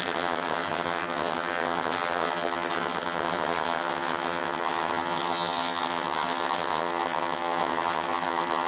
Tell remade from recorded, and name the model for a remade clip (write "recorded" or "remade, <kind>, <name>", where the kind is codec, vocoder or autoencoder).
remade, vocoder, HiFi-GAN